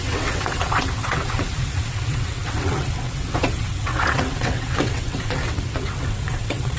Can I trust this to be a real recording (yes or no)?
no